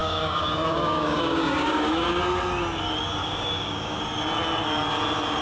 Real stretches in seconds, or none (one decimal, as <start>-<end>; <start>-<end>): 2.2-3.2; 4.0-5.4